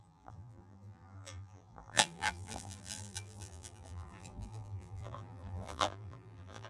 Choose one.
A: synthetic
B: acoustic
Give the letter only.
A